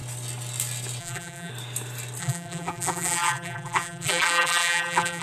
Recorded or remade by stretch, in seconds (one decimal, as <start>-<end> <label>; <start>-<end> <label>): 0.0-1.0 recorded; 1.0-1.5 remade; 1.5-2.2 recorded; 2.2-5.2 remade